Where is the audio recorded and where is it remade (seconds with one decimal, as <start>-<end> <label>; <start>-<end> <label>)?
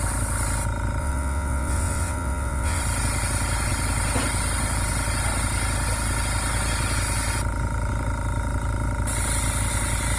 0.0-1.0 recorded; 1.0-2.8 remade; 2.8-10.2 recorded